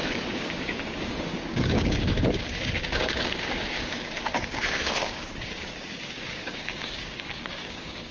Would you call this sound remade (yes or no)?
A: yes